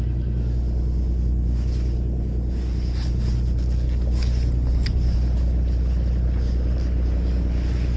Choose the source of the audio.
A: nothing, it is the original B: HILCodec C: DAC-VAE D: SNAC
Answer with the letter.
A